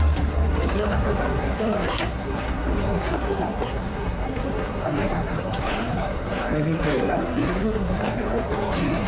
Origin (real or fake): fake